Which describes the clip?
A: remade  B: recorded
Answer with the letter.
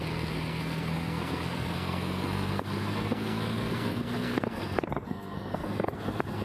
A